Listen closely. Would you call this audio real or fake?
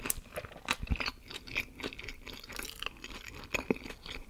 real